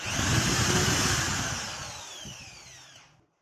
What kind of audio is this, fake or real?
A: fake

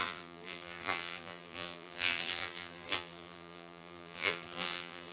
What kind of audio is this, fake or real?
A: fake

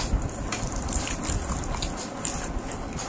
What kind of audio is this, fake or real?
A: real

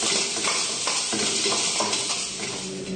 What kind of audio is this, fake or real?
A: real